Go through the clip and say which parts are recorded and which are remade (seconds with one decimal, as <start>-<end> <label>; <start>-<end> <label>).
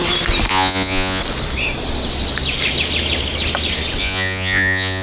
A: 0.0-0.5 recorded; 0.5-1.2 remade; 1.2-4.0 recorded; 4.0-5.0 remade